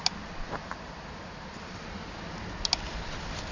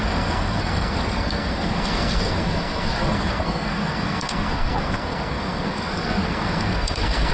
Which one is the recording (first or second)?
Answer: first